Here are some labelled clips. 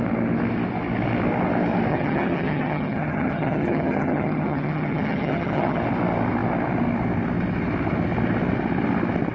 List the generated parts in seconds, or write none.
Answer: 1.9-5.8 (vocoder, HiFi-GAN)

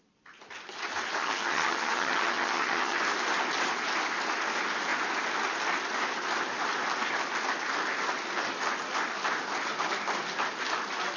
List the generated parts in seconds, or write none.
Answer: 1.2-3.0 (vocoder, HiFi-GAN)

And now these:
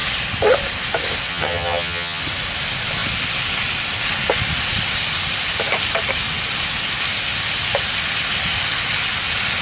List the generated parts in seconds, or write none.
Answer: 1.3-2.2 (vocoder, HiFi-GAN)

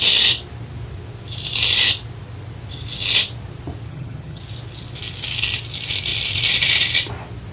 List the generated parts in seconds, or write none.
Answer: 3.9-4.4 (vocoder, HiFi-GAN)

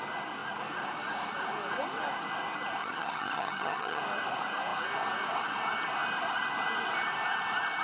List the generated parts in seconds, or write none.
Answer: 2.8-4.0 (vocoder, HiFi-GAN)